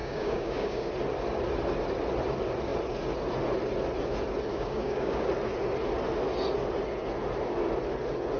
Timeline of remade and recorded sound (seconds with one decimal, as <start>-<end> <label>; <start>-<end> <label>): 0.0-0.9 remade; 0.9-4.5 recorded; 4.5-5.3 remade; 5.3-8.4 recorded